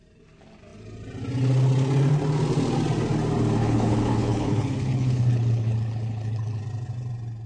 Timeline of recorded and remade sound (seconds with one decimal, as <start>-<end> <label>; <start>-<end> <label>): 0.0-3.6 recorded; 3.6-6.6 remade; 6.6-7.5 recorded

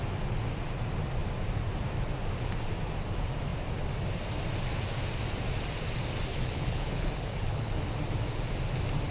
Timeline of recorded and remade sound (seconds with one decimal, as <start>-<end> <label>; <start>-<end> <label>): 0.0-6.3 recorded; 6.3-7.7 remade; 7.7-9.1 recorded

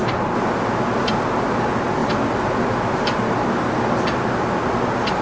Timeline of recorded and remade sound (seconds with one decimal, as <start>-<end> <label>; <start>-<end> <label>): 0.0-5.2 recorded